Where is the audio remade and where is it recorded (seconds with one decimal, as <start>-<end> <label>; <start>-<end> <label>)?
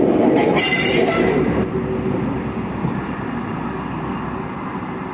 0.0-5.1 recorded